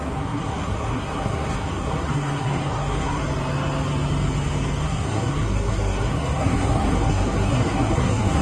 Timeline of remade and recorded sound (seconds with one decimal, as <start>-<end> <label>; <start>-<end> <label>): 0.0-3.2 remade; 3.2-4.8 recorded; 4.8-8.4 remade